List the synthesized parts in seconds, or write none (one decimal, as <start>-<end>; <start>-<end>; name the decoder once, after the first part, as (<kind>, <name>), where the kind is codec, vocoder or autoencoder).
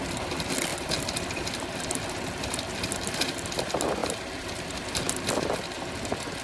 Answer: 0.7-2.7 (vocoder, BigVGAN v2); 4.0-5.0